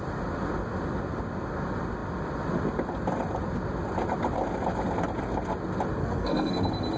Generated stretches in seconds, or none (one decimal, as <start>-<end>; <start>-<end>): 6.0-6.5